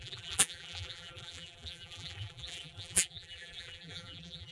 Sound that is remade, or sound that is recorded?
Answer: remade